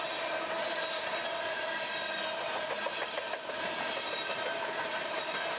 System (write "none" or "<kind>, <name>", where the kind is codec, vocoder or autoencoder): none